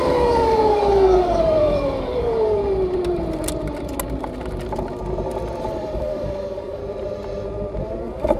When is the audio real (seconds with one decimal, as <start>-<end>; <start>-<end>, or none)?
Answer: 2.6-5.6; 6.8-8.0